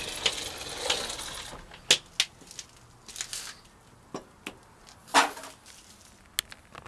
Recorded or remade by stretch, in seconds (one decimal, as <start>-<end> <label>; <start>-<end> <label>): 0.0-6.9 recorded